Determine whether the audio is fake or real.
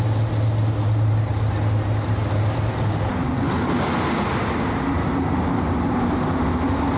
real